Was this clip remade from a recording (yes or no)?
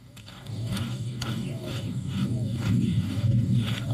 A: yes